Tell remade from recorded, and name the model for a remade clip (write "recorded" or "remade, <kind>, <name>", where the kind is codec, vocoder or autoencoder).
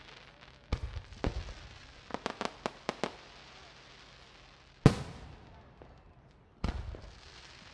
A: recorded